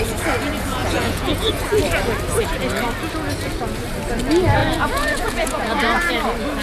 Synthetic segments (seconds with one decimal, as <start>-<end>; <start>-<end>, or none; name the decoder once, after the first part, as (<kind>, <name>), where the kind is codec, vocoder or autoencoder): 0.8-1.5 (vocoder, Vocos); 4.6-6.1